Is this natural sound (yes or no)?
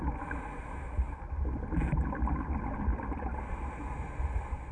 yes